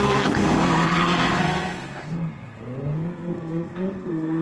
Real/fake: fake